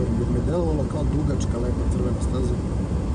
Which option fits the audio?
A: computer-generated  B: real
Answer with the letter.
B